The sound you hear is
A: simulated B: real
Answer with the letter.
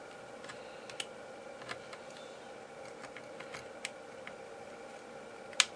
B